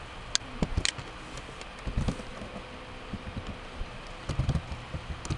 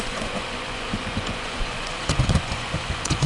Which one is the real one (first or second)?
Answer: first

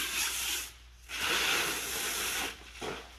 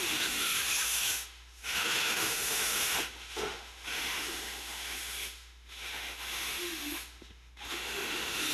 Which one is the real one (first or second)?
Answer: first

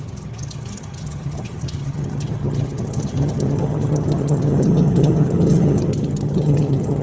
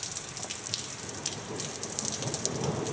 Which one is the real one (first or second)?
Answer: second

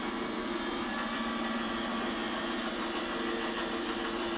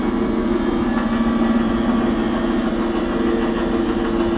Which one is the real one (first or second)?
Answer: second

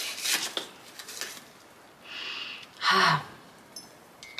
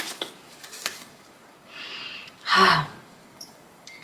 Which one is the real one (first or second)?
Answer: first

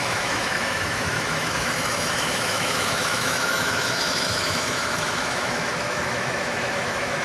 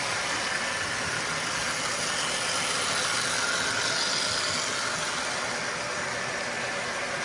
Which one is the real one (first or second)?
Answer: second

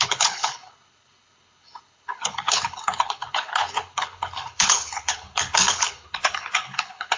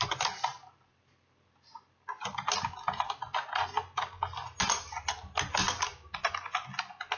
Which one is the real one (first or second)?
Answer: second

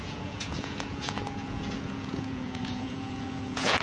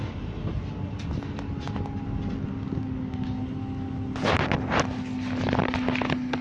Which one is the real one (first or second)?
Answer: second